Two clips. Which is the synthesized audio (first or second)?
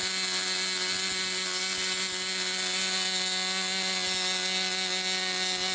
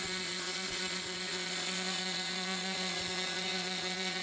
second